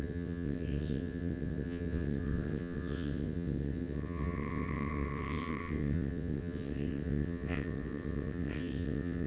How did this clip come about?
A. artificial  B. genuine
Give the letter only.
A